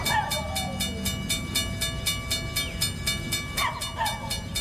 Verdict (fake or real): real